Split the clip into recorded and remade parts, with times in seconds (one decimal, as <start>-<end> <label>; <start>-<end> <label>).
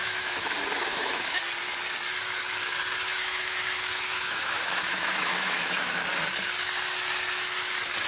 0.0-0.5 remade; 0.5-0.9 recorded; 0.9-1.4 remade; 1.4-3.1 recorded; 3.1-6.0 remade; 6.0-8.1 recorded